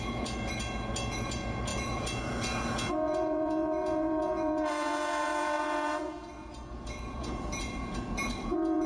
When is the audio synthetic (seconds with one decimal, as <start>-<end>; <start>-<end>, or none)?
0.0-8.9